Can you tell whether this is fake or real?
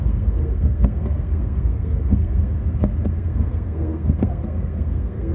fake